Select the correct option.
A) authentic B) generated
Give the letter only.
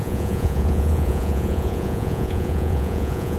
B